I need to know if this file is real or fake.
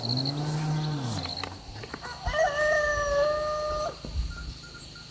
real